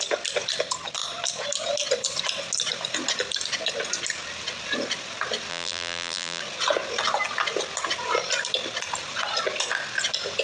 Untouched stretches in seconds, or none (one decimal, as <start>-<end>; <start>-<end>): 0.0-5.5; 6.4-10.4

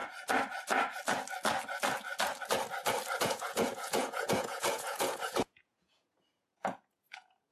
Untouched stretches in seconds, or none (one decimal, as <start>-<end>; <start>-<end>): 0.0-3.2

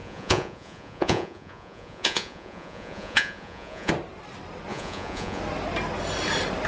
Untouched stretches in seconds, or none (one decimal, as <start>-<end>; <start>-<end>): 3.9-4.7; 5.4-6.7